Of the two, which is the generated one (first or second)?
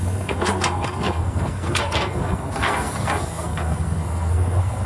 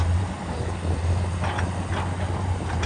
first